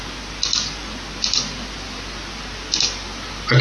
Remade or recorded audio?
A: recorded